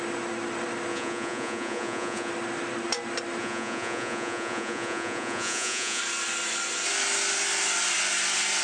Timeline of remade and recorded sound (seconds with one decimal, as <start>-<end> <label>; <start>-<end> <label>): 0.0-0.9 recorded; 0.9-2.3 remade; 2.3-3.4 recorded; 3.4-6.0 remade; 6.0-8.6 recorded